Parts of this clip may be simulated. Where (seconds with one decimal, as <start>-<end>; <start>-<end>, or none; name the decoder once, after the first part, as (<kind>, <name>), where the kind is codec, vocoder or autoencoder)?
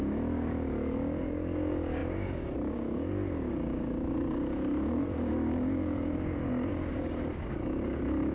0.0-8.3 (codec, DAC)